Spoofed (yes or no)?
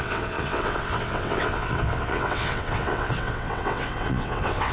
yes